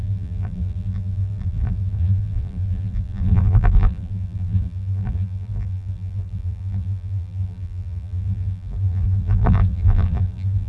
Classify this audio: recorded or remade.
remade